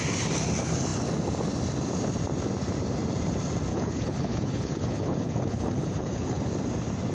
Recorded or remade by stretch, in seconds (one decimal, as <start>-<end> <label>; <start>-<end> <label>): 0.0-3.7 recorded; 3.7-6.4 remade; 6.4-7.1 recorded